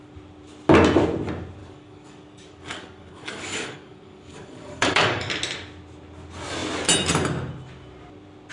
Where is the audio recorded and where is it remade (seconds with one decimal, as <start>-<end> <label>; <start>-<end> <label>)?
0.0-1.6 recorded; 1.6-5.3 remade; 5.3-8.5 recorded